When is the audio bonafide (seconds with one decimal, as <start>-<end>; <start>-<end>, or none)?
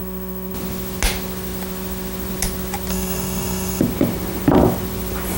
0.0-2.9; 3.8-5.4